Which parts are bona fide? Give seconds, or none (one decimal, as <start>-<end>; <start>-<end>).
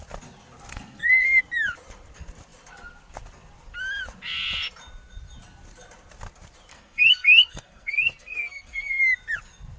0.0-0.7; 1.4-6.7; 9.0-9.8